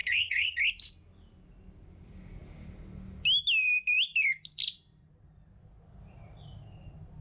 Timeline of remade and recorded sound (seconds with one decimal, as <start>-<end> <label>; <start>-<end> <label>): 0.0-0.6 remade; 0.6-7.2 recorded